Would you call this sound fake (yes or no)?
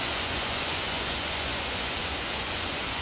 yes